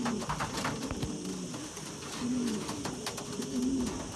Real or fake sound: real